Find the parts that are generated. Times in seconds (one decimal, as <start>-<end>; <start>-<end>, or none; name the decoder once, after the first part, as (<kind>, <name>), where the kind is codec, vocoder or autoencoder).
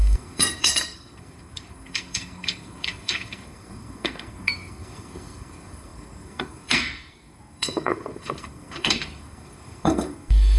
0.0-10.6 (codec, SNAC)